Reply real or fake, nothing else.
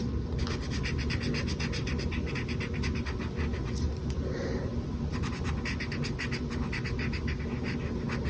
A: real